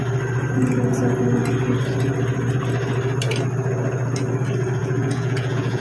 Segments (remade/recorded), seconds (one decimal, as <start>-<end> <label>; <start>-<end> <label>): 0.0-4.8 recorded; 4.8-5.8 remade